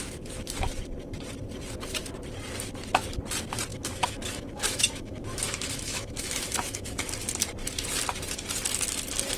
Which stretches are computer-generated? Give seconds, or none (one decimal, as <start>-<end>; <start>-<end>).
3.7-7.1